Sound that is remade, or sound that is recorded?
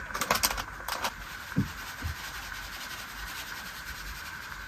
recorded